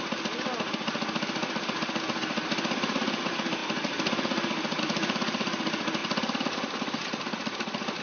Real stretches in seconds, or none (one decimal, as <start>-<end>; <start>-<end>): 0.0-8.0